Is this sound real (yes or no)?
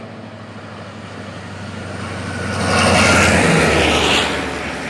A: yes